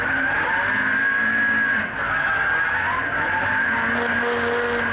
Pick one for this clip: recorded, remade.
recorded